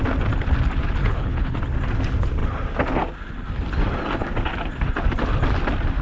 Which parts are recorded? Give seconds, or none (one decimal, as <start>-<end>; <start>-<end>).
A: 0.0-1.0; 1.6-6.0